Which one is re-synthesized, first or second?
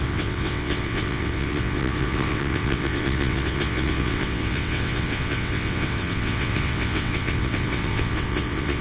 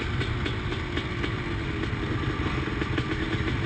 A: first